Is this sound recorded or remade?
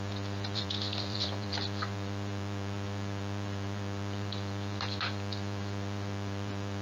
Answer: remade